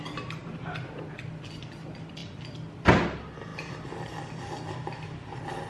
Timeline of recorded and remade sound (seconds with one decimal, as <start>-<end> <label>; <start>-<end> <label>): 0.0-0.4 recorded; 0.4-1.1 remade; 1.1-3.5 recorded; 3.5-4.2 remade; 4.2-5.7 recorded